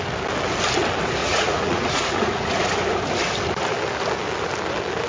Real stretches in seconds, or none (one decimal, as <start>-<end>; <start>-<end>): 0.0-1.2; 2.6-5.1